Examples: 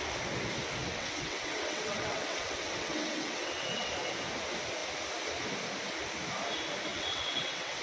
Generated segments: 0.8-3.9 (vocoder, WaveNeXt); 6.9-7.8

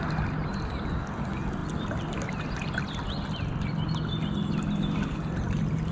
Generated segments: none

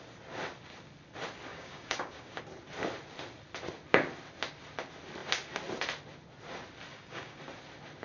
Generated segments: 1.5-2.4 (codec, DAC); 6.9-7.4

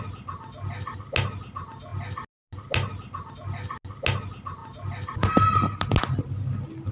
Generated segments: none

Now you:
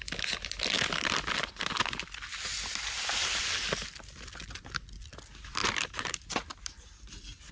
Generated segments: 2.7-3.4 (vocoder, BigVGAN v2); 5.6-7.1

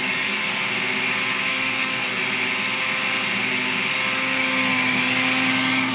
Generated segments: 0.0-0.6 (codec, DAC); 1.5-2.2

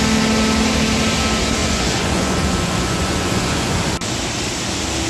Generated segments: 1.6-3.8 (vocoder, Vocos)